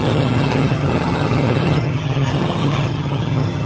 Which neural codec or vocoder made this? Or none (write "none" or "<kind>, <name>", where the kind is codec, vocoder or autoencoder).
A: vocoder, HiFi-GAN